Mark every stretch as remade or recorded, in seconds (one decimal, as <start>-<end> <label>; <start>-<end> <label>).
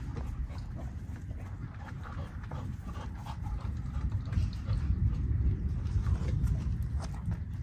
0.0-1.6 recorded; 1.6-6.2 remade; 6.2-7.6 recorded